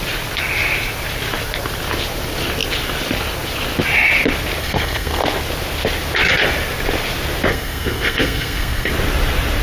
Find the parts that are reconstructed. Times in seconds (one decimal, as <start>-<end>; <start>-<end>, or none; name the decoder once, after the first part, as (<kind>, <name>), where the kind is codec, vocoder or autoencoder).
4.6-5.2 (codec, SNAC); 7.5-8.9